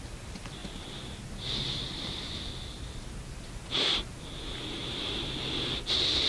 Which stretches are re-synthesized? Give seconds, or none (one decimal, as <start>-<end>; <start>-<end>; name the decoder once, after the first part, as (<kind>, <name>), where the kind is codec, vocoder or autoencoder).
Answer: none